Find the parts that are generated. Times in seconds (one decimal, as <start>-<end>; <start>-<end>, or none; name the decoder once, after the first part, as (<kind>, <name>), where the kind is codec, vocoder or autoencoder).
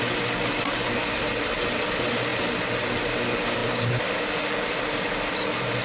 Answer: 2.3-2.9 (vocoder, BigVGAN v2)